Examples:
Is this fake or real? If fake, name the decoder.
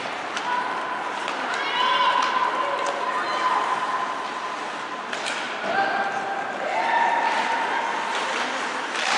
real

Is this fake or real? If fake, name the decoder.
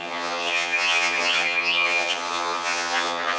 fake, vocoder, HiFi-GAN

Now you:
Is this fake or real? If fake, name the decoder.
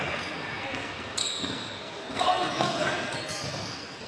fake, codec, SNAC